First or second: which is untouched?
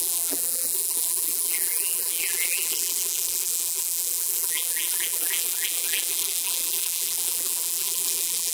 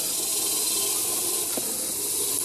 second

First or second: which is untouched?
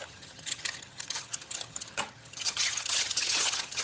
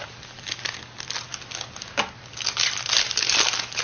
second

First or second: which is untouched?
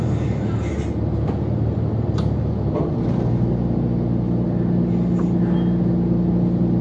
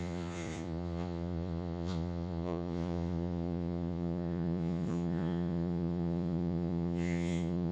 first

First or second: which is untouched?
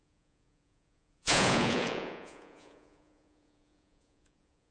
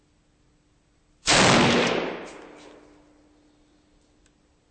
second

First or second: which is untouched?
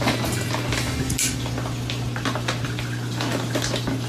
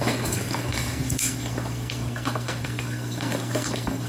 first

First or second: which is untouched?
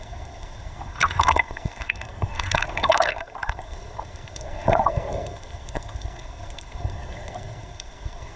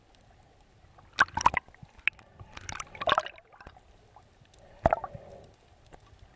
second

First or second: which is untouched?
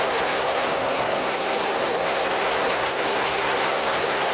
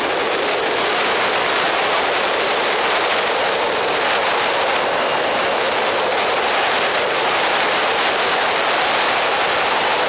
second